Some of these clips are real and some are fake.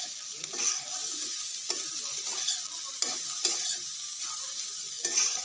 real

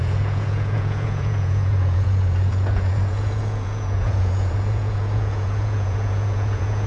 fake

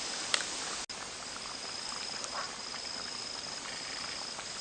real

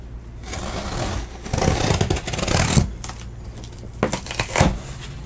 real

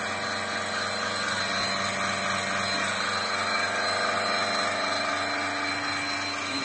real